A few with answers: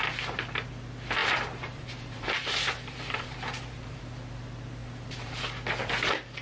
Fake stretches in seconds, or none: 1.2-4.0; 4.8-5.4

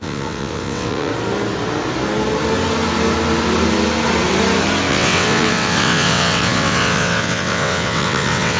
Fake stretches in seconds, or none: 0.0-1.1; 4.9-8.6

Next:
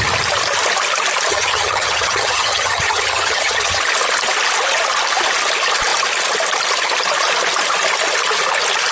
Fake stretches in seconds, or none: 1.3-3.8

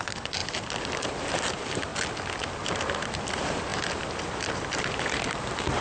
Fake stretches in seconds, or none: 0.0-1.9; 3.0-5.8

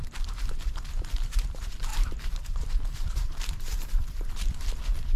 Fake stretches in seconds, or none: 0.0-5.2